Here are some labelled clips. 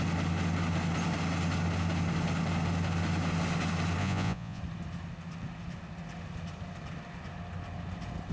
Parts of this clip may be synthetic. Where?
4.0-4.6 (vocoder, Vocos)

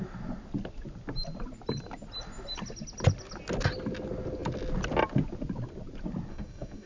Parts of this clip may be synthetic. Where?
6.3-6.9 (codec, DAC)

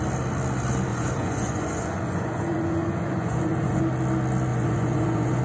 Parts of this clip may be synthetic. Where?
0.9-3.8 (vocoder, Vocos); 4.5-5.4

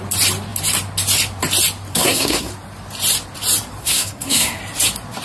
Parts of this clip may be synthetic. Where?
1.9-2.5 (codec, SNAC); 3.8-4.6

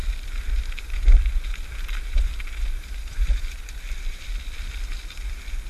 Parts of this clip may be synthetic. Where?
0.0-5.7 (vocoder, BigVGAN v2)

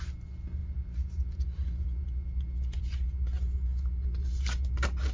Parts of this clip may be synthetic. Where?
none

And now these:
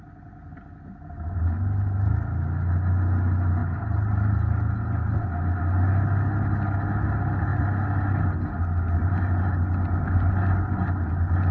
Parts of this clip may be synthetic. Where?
none

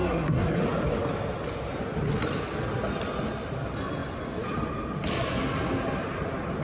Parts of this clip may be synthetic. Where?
0.0-0.6 (codec, SNAC)